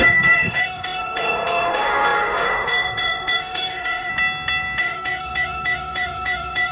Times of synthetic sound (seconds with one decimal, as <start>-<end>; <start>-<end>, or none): 0.0-4.1; 4.8-6.7